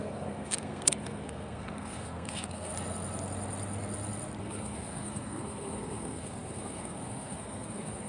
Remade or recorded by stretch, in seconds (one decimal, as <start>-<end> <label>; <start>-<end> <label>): 0.0-2.7 remade; 2.7-4.4 recorded; 4.4-8.1 remade